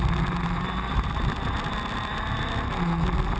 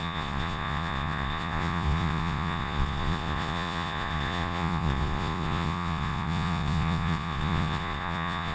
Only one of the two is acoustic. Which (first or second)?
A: first